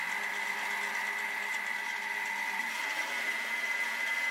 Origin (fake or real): real